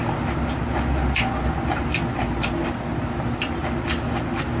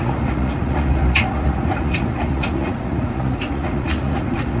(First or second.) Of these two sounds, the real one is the first